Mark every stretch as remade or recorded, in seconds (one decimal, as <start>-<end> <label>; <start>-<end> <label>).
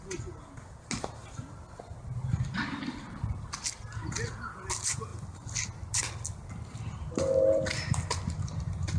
0.0-1.2 recorded; 1.2-4.4 remade; 4.4-7.0 recorded; 7.0-8.0 remade; 8.0-9.0 recorded